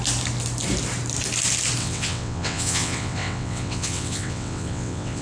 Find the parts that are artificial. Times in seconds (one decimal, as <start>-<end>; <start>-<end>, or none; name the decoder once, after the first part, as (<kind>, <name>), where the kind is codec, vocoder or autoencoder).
1.8-5.2 (vocoder, WaveNeXt)